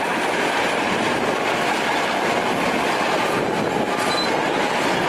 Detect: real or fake real